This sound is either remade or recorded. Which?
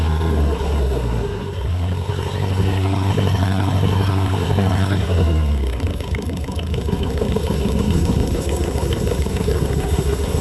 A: remade